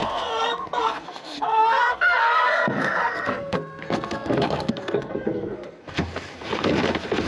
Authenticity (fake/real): fake